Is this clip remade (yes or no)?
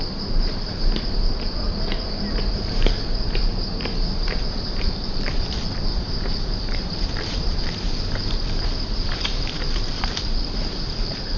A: yes